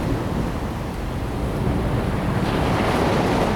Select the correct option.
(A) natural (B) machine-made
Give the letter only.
A